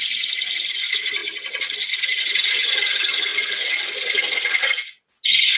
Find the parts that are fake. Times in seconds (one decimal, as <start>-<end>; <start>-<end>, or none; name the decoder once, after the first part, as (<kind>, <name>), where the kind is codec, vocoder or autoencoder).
none